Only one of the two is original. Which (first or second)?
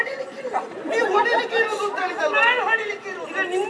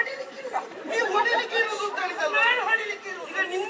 first